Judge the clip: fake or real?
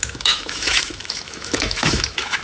fake